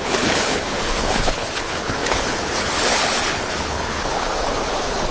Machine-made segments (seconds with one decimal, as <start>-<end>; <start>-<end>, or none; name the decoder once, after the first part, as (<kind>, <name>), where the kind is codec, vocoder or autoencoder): 0.0-5.1 (codec, HILCodec)